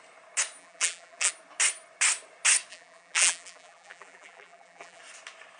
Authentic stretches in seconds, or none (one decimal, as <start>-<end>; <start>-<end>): 0.0-0.6; 1.3-2.7; 5.0-5.6